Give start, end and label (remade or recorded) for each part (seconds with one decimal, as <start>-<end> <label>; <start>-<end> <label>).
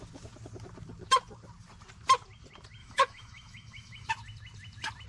0.0-2.8 recorded; 2.8-4.1 remade; 4.1-5.1 recorded